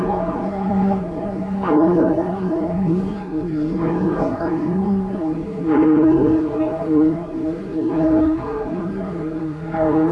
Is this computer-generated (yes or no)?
yes